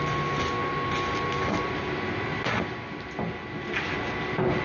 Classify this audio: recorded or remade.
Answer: recorded